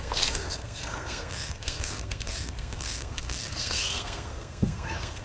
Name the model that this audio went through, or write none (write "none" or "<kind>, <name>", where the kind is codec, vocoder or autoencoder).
codec, SNAC